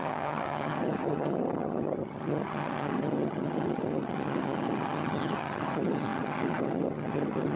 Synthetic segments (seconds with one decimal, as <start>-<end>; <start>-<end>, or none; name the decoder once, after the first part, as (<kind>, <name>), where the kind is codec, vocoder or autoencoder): 0.0-7.6 (vocoder, HiFi-GAN)